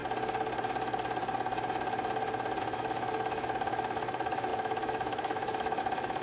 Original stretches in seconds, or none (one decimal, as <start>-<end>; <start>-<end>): 0.0-2.6